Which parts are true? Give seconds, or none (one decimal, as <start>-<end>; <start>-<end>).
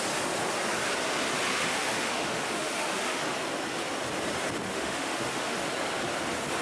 0.0-1.5; 3.2-4.7; 5.7-6.6